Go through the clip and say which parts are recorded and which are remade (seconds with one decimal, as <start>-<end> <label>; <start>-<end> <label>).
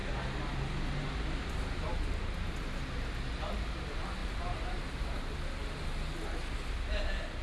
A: 0.0-4.2 recorded; 4.2-4.9 remade; 4.9-7.4 recorded